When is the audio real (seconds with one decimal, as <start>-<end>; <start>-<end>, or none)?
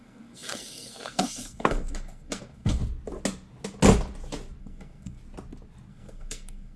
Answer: 2.8-4.6; 5.2-5.9